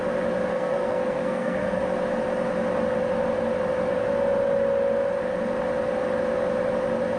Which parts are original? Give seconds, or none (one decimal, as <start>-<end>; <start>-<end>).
0.0-0.5; 1.8-7.2